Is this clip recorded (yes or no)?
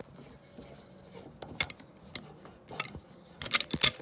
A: yes